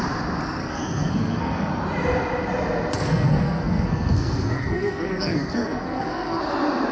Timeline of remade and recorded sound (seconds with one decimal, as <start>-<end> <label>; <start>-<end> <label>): 0.0-0.6 recorded; 0.6-1.7 remade; 1.7-3.1 recorded; 3.1-6.4 remade; 6.4-6.9 recorded